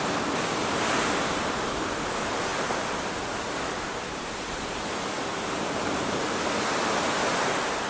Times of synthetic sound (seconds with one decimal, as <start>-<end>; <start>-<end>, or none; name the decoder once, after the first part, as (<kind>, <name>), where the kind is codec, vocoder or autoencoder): none